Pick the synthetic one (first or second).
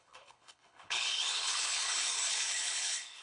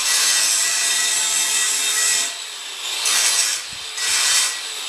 first